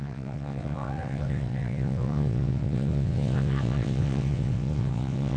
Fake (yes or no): yes